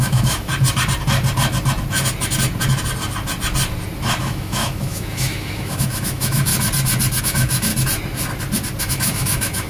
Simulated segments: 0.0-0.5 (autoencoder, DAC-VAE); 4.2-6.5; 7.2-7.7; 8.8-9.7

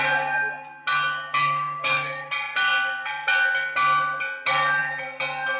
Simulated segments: 1.4-2.3 (autoencoder, DAC-VAE)

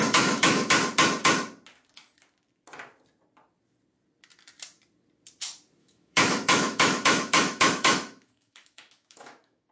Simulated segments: 0.0-0.7 (autoencoder, DAC-VAE); 5.8-9.7

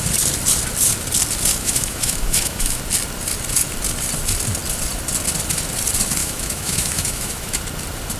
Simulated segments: 1.5-2.8 (autoencoder, DAC-VAE); 6.2-7.6

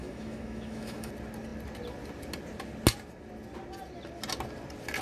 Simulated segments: 0.0-1.1 (autoencoder, DAC-VAE)

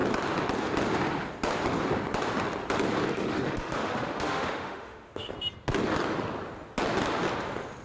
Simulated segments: 3.1-5.3 (autoencoder, DAC-VAE)

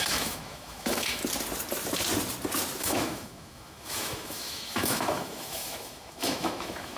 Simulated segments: 0.0-1.2 (autoencoder, DAC-VAE); 2.8-7.0

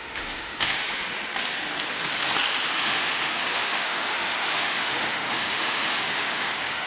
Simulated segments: 0.0-0.8 (autoencoder, DAC-VAE); 2.7-6.9